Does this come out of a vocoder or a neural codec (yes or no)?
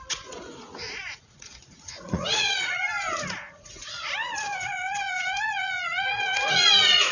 yes